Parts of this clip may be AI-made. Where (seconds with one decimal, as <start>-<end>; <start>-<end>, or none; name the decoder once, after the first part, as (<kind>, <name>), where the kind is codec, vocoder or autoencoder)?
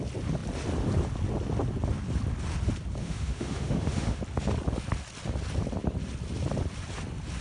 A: 3.0-4.2 (autoencoder, DAC-VAE)